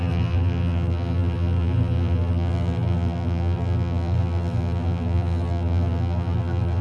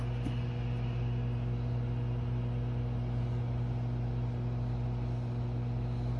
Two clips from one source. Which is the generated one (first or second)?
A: first